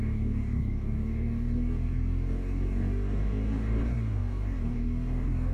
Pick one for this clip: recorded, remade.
remade